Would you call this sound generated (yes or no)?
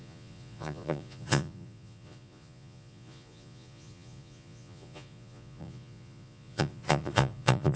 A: yes